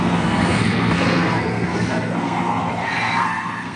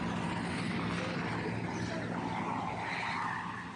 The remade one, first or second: first